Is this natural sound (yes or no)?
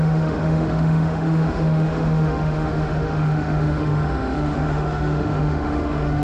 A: no